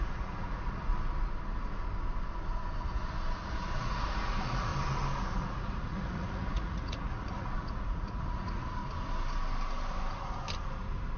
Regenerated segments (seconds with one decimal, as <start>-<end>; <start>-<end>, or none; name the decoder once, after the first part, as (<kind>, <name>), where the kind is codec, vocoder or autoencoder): 0.0-0.9 (vocoder, Vocos); 2.8-4.7; 5.2-8.8